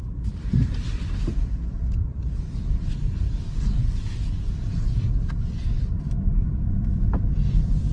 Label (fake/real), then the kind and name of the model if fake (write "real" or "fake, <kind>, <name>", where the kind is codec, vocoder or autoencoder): fake, vocoder, BigVGAN v2